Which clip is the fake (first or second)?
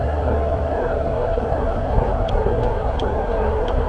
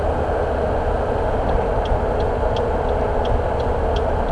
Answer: first